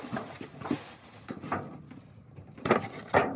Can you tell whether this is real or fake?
real